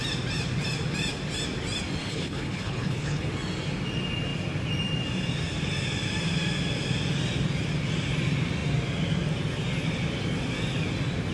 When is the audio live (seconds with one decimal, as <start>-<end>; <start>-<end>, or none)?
0.0-2.0; 3.3-11.3